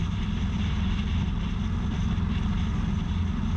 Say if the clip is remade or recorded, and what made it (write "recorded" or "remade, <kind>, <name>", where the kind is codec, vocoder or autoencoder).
recorded